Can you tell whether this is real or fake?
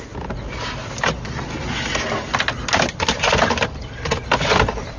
real